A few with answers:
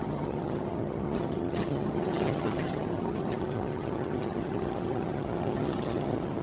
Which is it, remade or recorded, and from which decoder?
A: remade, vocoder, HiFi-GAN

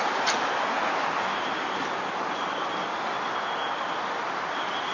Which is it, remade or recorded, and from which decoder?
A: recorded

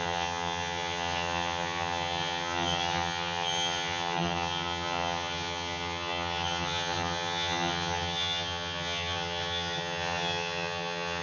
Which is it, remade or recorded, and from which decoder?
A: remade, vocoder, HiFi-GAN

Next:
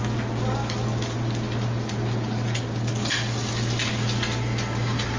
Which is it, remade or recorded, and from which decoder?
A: recorded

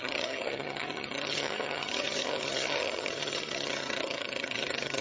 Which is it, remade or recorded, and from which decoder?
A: remade, vocoder, HiFi-GAN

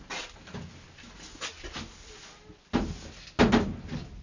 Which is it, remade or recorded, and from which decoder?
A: recorded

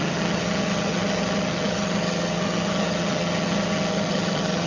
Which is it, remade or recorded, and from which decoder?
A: remade, vocoder, HiFi-GAN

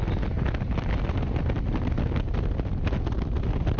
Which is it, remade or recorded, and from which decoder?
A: recorded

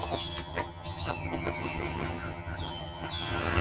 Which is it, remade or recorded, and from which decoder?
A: remade, vocoder, HiFi-GAN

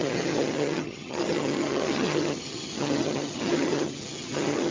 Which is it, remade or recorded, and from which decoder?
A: remade, vocoder, HiFi-GAN